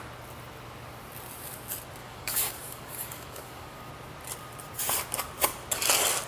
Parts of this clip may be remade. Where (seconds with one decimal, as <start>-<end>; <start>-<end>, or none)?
2.0-3.9